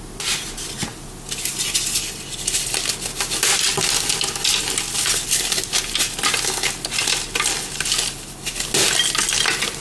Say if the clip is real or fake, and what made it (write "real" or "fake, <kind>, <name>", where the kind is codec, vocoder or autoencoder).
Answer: real